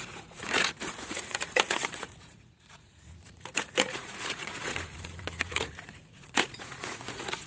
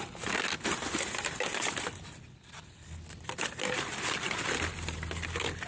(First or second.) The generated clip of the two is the first